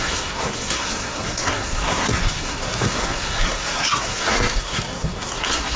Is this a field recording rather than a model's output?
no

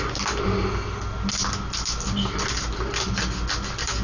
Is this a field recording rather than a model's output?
yes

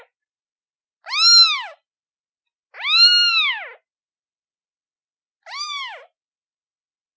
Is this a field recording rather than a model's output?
yes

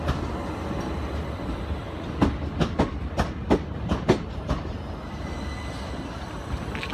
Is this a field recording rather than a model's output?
yes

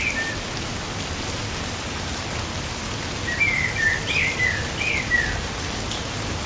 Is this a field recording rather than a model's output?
yes